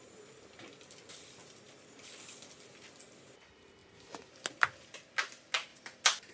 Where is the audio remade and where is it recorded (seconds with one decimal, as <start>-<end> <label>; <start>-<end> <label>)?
0.0-6.3 recorded